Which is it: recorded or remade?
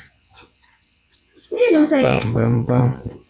remade